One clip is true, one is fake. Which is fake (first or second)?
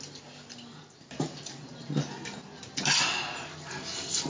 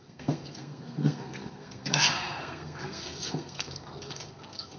second